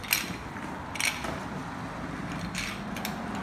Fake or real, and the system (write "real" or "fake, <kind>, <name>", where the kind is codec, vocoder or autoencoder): real